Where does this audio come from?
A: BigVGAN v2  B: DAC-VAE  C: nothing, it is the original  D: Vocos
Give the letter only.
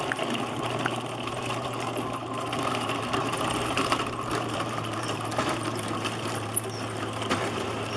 A